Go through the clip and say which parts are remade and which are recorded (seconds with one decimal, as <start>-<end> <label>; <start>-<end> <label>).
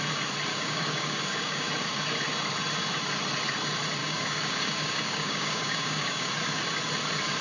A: 0.0-0.5 recorded; 0.5-1.7 remade; 1.7-4.0 recorded; 4.0-6.3 remade; 6.3-7.4 recorded